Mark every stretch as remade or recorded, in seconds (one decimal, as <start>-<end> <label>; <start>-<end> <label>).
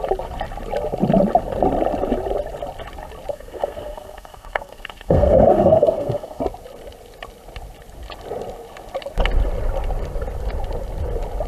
0.0-3.3 recorded; 3.3-6.4 remade; 6.4-11.5 recorded